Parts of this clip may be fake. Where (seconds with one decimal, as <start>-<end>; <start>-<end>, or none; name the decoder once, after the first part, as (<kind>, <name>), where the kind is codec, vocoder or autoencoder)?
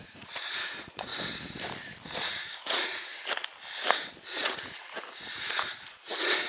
0.0-1.1 (vocoder, Vocos); 2.0-3.1; 4.3-6.5